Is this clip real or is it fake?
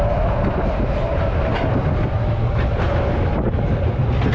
real